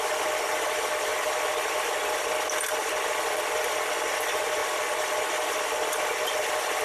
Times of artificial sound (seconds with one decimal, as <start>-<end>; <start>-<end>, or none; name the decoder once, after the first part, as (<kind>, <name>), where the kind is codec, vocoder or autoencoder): none